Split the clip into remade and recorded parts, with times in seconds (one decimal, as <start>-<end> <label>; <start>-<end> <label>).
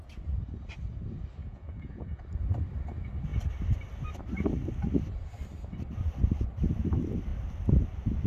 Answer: 0.0-1.4 recorded; 1.4-2.2 remade; 2.2-8.3 recorded